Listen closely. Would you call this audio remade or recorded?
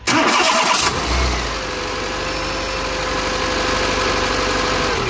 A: recorded